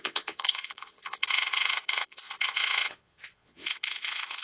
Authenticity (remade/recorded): remade